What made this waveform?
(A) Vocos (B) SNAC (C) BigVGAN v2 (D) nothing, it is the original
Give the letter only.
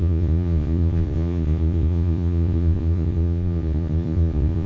A